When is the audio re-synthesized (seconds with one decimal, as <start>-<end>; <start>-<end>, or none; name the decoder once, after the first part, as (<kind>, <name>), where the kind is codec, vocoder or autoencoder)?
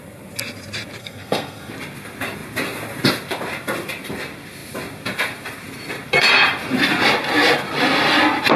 1.0-1.7 (codec, SNAC)